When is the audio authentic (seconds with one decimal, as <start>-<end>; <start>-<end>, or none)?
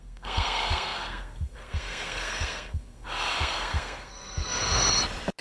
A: 4.6-5.4